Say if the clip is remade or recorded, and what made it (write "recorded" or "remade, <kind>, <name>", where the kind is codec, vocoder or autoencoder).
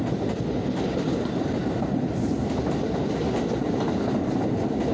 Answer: recorded